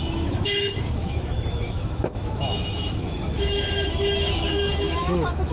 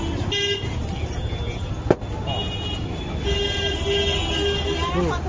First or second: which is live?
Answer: second